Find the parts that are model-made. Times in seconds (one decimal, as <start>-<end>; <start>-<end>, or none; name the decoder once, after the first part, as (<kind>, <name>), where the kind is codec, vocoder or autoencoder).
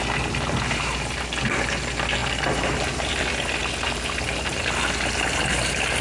2.2-3.2 (vocoder, BigVGAN v2)